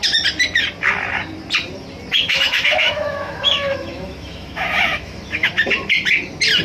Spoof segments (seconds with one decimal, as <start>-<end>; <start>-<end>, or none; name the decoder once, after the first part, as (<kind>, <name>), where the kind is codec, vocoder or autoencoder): 2.1-5.5 (autoencoder, DAC-VAE)